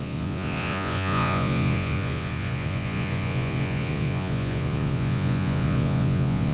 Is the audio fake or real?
fake